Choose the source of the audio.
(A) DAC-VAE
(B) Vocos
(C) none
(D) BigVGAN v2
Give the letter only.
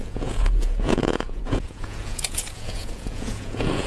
B